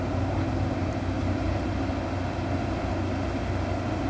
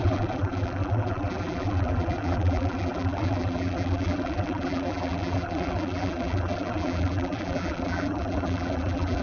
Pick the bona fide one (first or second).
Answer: first